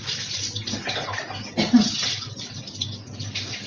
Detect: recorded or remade recorded